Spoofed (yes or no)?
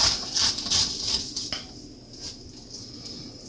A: no